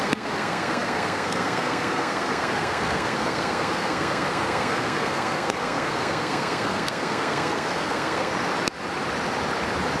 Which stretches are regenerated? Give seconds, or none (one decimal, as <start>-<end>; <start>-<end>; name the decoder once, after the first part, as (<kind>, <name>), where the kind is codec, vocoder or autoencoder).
0.0-8.3 (codec, SNAC)